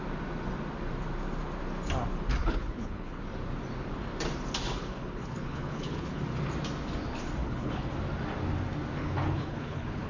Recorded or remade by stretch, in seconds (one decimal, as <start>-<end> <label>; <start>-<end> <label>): 0.0-2.4 recorded; 2.4-3.2 remade; 3.2-4.8 recorded; 4.8-6.2 remade; 6.2-7.4 recorded; 7.4-7.9 remade; 7.9-9.0 recorded; 9.0-10.1 remade